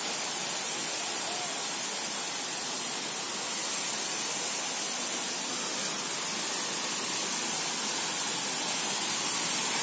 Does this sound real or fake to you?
real